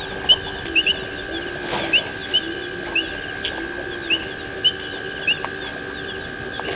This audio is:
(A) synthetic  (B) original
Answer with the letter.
B